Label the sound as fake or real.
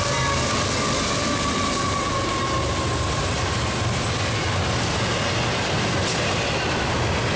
real